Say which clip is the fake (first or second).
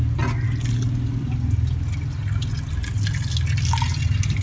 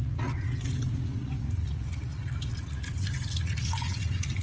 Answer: second